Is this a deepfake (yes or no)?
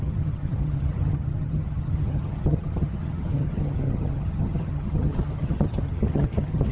yes